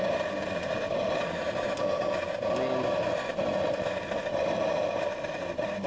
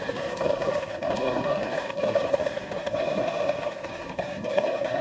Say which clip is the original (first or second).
first